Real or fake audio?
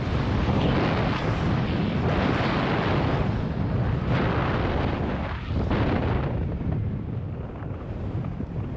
real